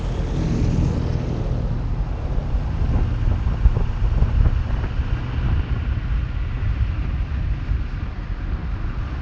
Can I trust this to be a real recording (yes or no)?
yes